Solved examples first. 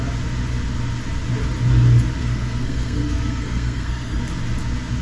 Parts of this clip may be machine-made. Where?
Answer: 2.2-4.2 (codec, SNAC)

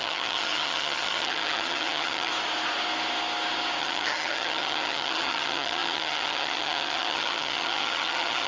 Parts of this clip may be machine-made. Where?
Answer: 0.0-2.3 (vocoder, HiFi-GAN); 3.8-8.5

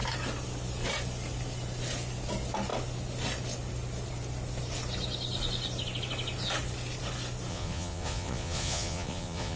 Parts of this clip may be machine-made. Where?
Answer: 7.5-9.6 (vocoder, Vocos)

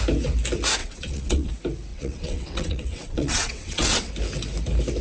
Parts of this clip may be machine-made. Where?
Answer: 0.8-1.5 (vocoder, WaveNeXt); 1.9-4.1

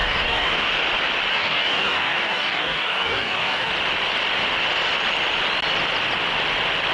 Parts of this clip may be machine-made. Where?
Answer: 0.0-0.7 (codec, DAC); 1.3-3.7

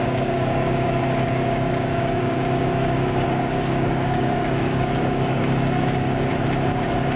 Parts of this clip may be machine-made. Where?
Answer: 0.0-6.3 (codec, DAC)

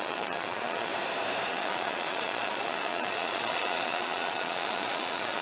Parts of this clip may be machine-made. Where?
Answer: 0.0-0.9 (vocoder, Vocos); 1.5-5.4

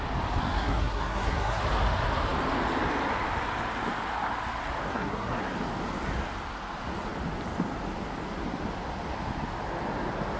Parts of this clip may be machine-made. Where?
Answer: 0.4-1.6 (codec, SNAC); 4.9-5.4